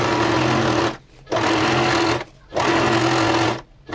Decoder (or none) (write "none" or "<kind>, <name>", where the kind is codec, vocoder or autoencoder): none